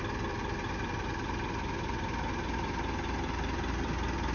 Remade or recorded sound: recorded